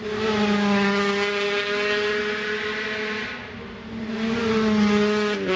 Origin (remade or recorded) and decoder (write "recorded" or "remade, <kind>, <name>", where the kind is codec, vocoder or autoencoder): recorded